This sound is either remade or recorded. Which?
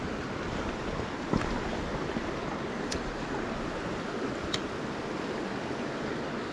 recorded